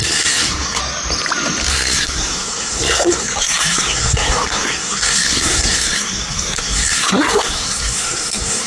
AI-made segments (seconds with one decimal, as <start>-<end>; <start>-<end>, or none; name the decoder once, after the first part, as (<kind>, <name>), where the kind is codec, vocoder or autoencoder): 0.0-0.8 (codec, SNAC); 1.7-8.7